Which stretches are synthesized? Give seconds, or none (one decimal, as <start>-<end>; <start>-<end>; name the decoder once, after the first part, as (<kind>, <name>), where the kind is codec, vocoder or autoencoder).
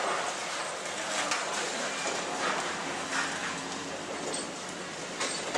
none